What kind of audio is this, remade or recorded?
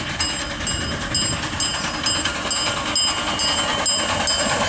recorded